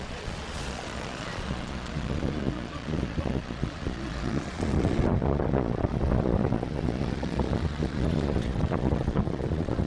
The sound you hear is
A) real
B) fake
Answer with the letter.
B